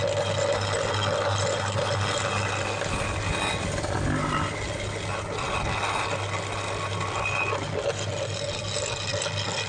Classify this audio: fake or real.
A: real